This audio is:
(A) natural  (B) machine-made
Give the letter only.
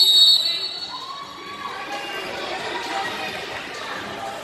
A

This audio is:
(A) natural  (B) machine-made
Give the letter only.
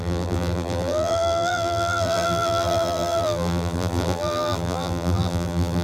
B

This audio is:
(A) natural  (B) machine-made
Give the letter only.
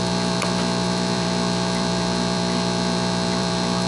B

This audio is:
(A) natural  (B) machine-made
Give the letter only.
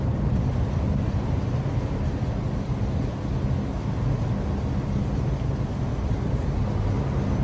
A